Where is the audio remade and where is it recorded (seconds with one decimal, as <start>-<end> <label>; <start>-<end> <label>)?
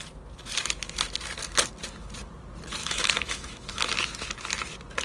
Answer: 0.0-2.8 recorded; 2.8-3.8 remade; 3.8-5.0 recorded